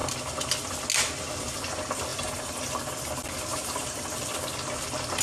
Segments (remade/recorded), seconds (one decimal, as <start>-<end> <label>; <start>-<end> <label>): 0.0-2.1 recorded; 2.1-2.7 remade; 2.7-3.5 recorded; 3.5-4.3 remade; 4.3-5.2 recorded